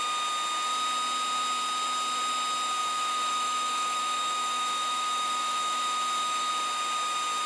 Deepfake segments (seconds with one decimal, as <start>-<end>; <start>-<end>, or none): 2.8-6.5

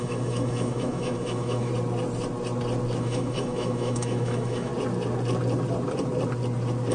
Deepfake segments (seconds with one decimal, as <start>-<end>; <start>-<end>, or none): 0.0-1.7; 3.0-4.7

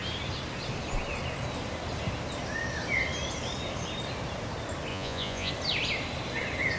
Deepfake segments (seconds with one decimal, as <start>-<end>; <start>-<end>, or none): 4.9-5.5